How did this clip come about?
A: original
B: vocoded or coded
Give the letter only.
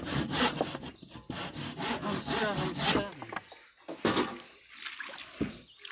A